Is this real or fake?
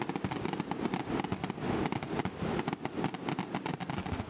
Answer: real